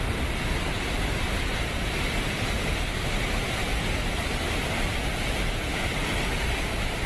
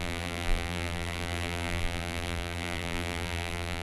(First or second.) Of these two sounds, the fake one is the second